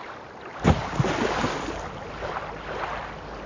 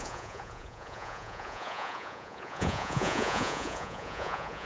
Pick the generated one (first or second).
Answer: second